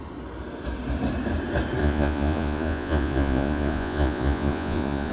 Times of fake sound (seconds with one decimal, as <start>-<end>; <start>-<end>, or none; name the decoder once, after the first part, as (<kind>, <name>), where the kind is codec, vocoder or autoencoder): 1.8-5.1 (vocoder, Vocos)